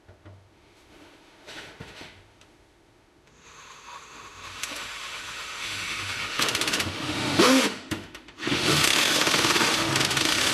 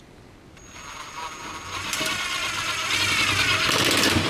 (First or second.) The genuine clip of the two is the second